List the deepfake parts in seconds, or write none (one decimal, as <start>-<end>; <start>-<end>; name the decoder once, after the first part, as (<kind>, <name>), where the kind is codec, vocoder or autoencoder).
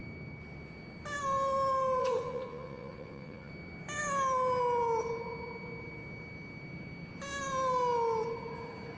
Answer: 2.0-3.5 (vocoder, Vocos)